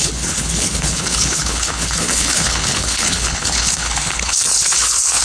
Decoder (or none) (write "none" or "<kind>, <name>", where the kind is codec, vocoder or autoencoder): codec, HILCodec